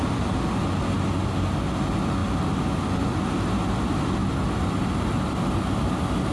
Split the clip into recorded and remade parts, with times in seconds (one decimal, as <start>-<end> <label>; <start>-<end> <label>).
0.0-2.2 recorded; 2.2-3.5 remade; 3.5-6.3 recorded